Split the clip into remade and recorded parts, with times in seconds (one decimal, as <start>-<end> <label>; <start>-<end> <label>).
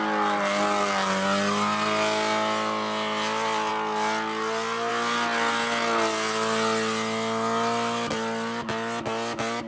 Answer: 0.0-9.7 recorded